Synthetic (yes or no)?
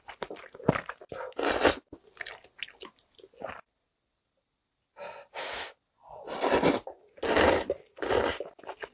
no